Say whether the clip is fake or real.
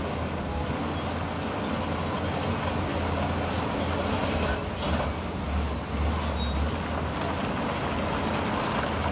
real